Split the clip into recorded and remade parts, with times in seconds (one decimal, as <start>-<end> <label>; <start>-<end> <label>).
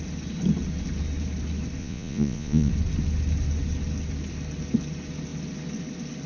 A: 0.0-1.8 recorded; 1.8-2.7 remade; 2.7-6.3 recorded